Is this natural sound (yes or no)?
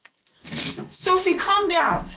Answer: no